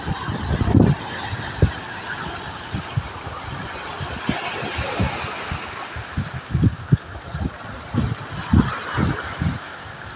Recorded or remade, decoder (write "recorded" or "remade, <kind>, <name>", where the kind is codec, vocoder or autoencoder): recorded